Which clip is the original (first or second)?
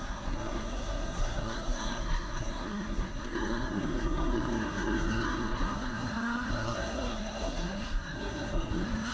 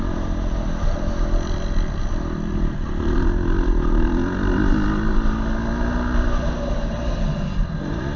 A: second